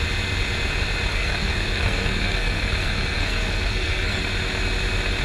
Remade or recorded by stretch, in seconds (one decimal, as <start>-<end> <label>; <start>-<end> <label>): 0.0-1.1 recorded; 1.1-4.2 remade; 4.2-5.2 recorded